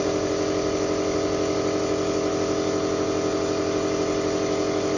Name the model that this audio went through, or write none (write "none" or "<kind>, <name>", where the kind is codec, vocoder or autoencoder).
none